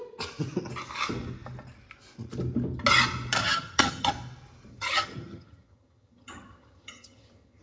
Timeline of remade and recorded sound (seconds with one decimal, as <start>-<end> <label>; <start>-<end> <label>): 0.0-3.4 recorded; 3.4-4.1 remade; 4.1-4.7 recorded; 4.7-7.6 remade